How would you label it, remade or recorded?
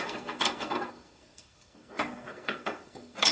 remade